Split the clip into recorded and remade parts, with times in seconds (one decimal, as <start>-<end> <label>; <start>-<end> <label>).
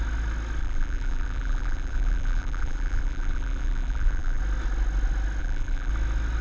0.0-0.6 recorded; 0.6-4.4 remade; 4.4-5.4 recorded; 5.4-5.9 remade; 5.9-6.4 recorded